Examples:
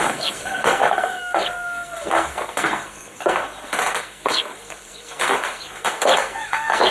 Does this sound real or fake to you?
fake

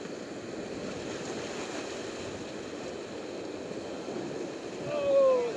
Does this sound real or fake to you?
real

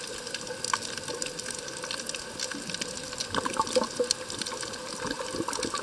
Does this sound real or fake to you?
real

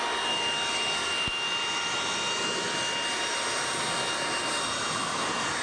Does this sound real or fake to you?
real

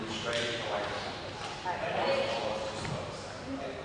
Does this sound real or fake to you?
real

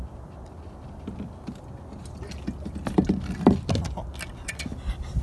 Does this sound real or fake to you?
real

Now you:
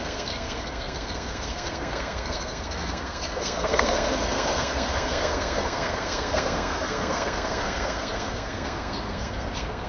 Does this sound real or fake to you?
fake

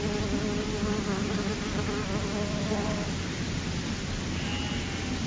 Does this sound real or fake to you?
real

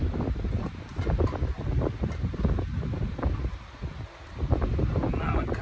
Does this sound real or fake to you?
real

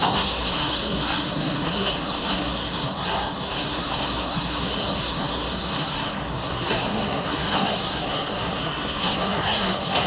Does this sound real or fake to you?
fake